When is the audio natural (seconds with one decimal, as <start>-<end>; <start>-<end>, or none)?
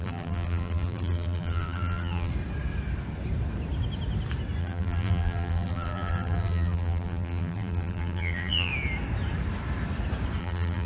2.3-4.6; 8.7-10.4